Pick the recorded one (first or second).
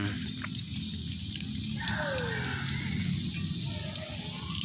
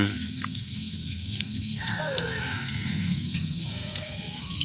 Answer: first